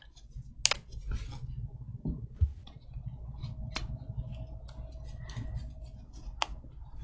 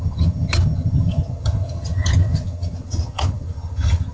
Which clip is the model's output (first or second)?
second